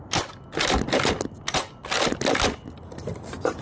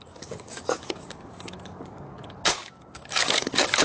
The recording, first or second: first